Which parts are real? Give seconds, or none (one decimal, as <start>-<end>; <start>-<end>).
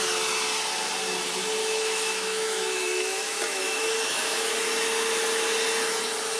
0.0-1.6; 4.5-6.4